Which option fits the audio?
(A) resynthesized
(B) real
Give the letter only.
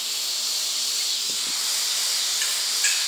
B